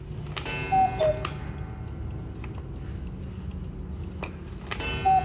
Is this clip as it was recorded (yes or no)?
yes